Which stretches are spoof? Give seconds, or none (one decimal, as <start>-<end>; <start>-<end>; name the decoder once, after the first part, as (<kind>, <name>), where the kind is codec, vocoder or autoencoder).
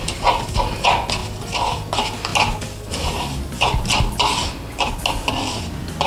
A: none